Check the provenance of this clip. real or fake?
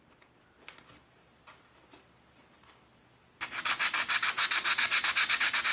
real